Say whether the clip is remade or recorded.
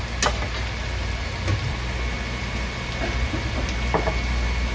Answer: recorded